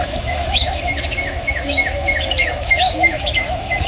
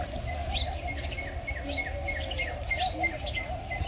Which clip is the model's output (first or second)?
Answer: first